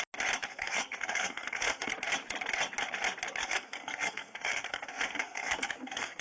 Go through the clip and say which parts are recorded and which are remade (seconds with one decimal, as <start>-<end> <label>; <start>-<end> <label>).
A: 0.0-0.5 recorded; 0.5-1.9 remade; 1.9-3.4 recorded; 3.4-6.2 remade